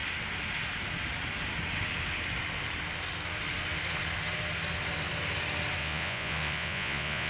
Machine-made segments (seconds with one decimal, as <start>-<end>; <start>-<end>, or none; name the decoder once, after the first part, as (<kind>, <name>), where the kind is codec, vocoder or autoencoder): 5.8-7.3 (vocoder, Vocos)